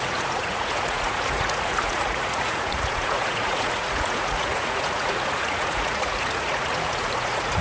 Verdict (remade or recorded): remade